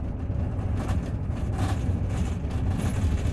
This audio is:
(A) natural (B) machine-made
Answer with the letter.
A